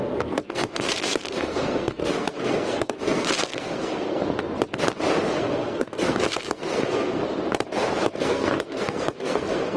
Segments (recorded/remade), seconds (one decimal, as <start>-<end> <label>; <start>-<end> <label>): 0.0-4.2 remade; 4.2-5.3 recorded; 5.3-7.2 remade; 7.2-8.1 recorded; 8.1-9.8 remade